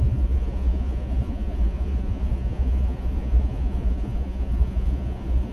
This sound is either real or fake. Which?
fake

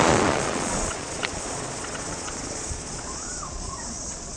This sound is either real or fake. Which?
fake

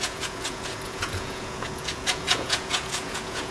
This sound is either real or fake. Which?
fake